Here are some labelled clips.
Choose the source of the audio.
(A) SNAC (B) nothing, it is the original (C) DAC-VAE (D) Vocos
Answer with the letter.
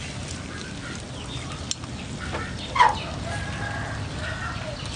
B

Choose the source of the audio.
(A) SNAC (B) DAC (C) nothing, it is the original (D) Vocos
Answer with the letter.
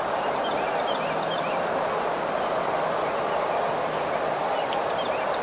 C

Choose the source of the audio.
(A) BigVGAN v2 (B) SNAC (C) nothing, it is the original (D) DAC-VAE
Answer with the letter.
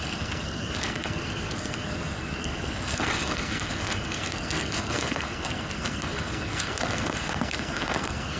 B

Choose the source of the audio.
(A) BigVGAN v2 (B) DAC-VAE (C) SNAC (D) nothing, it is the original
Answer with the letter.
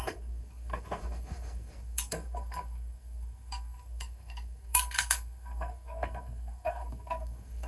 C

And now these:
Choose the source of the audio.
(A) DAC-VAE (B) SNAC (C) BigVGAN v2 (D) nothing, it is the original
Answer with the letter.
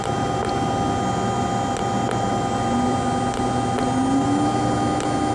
D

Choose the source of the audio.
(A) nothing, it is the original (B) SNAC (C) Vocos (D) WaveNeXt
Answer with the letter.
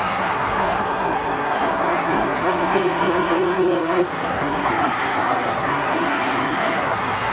B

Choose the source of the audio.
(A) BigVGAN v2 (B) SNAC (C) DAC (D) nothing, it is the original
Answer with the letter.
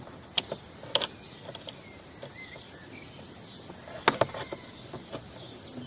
D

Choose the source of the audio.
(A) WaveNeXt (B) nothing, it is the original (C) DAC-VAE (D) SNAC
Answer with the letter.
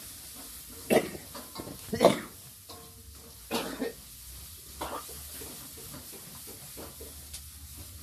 B